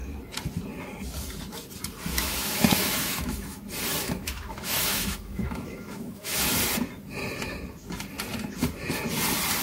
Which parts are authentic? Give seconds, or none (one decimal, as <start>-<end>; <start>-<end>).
0.0-2.1; 3.6-4.0; 6.5-9.6